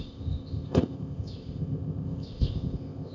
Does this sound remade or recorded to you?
remade